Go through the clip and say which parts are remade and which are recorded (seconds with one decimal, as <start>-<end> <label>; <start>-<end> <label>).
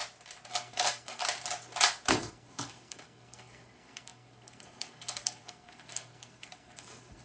0.0-0.5 recorded; 0.5-1.2 remade; 1.2-2.1 recorded; 2.1-7.2 remade